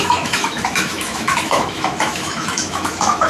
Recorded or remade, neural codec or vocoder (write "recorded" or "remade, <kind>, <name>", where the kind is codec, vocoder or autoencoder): remade, autoencoder, DAC-VAE